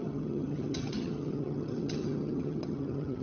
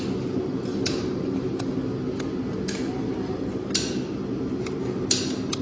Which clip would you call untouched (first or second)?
second